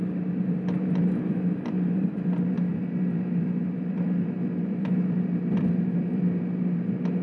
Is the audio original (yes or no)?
no